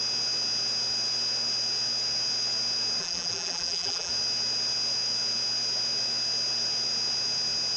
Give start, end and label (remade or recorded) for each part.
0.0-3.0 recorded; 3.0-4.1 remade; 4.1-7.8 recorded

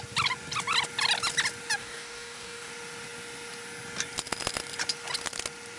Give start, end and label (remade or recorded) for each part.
0.0-1.8 recorded; 1.8-2.7 remade; 2.7-5.8 recorded

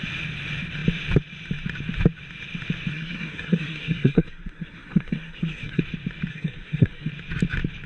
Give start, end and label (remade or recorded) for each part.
0.0-2.9 recorded; 2.9-5.8 remade; 5.8-6.3 recorded; 6.3-7.1 remade; 7.1-7.9 recorded

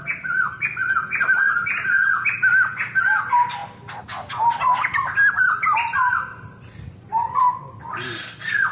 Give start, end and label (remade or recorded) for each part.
0.0-8.7 recorded

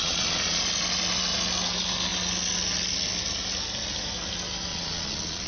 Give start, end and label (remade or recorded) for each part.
0.0-0.6 remade; 0.6-4.7 recorded; 4.7-5.5 remade

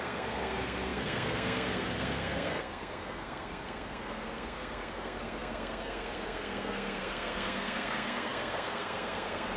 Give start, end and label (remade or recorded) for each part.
0.0-9.6 remade

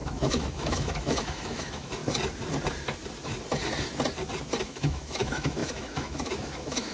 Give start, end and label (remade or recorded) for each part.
0.0-2.0 remade; 2.0-4.6 recorded; 4.6-6.9 remade

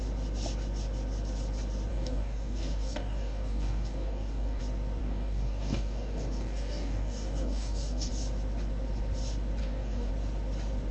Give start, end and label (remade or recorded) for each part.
0.0-1.9 recorded; 1.9-4.6 remade; 4.6-5.0 recorded; 5.0-8.1 remade; 8.1-9.6 recorded; 9.6-10.1 remade; 10.1-10.9 recorded